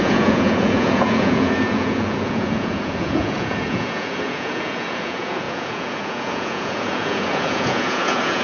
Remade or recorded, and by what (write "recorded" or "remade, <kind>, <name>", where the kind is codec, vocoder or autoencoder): remade, vocoder, Vocos